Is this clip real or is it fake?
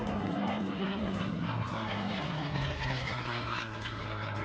fake